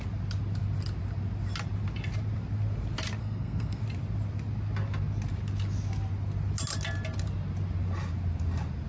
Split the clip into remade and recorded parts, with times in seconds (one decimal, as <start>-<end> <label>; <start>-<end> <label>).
0.0-3.2 recorded; 3.2-3.8 remade; 3.8-8.9 recorded